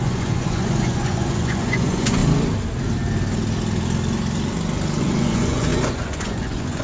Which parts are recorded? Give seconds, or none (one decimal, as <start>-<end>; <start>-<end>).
2.2-5.0